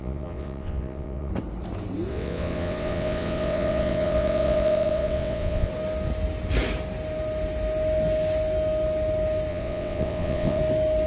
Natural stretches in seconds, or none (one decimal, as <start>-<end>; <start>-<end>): 1.3-2.1; 5.7-9.5; 10.6-11.1